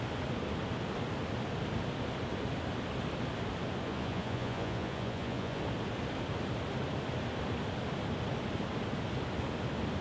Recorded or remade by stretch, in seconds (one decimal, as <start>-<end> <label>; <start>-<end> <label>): 0.0-3.9 recorded; 3.9-5.6 remade; 5.6-10.0 recorded